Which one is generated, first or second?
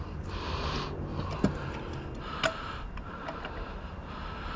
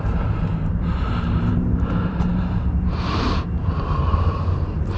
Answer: second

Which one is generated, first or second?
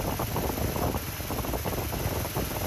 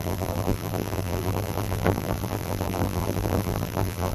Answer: second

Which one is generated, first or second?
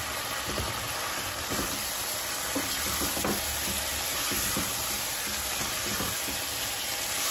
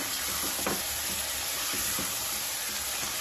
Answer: second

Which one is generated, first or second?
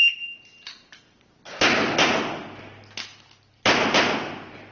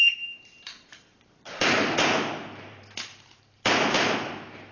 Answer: second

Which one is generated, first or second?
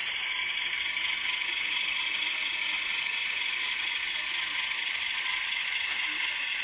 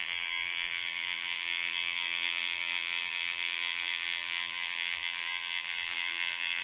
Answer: second